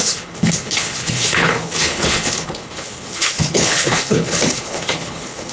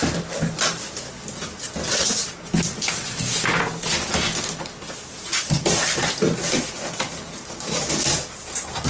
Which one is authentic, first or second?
second